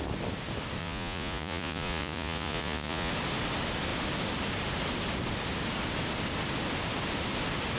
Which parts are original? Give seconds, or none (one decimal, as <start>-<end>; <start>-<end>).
0.0-0.8; 3.1-7.8